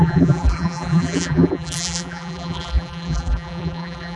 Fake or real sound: fake